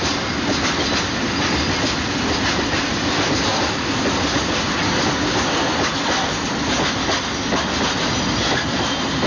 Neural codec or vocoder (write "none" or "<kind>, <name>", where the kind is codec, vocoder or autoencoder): none